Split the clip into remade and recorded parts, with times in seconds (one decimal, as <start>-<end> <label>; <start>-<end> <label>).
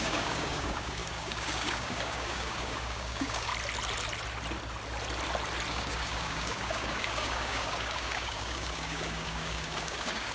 0.0-3.5 remade; 3.5-5.7 recorded; 5.7-10.3 remade